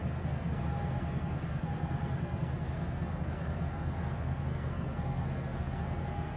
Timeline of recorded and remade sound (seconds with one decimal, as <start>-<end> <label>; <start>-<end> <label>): 0.0-6.4 remade